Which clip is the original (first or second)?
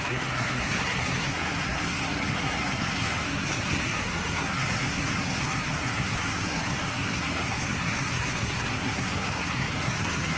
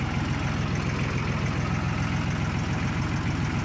second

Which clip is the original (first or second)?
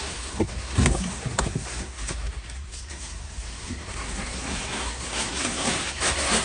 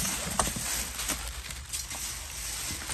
second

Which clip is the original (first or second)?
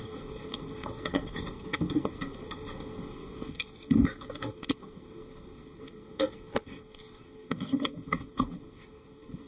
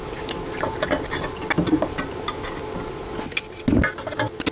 second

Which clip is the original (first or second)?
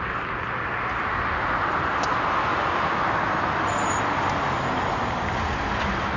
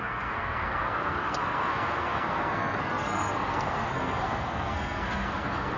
first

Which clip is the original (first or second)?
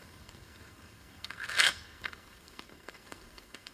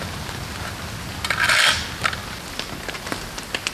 second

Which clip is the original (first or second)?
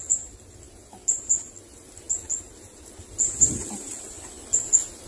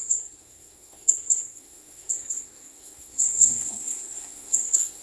first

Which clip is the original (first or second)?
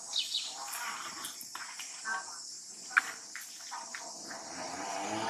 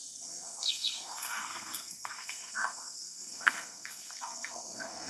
first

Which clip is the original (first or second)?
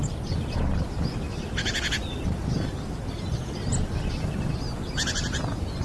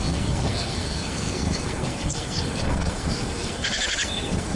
first